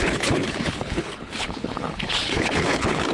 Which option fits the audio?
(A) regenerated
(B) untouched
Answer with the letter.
A